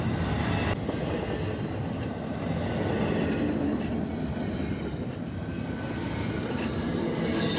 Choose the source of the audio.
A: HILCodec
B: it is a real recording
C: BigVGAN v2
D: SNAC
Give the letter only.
B